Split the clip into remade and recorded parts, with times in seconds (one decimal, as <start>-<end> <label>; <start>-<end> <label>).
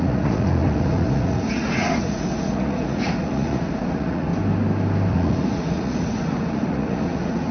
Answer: 0.0-4.3 remade; 4.3-5.1 recorded; 5.1-7.5 remade